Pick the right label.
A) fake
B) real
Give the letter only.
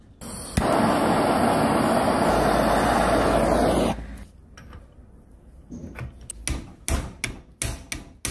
B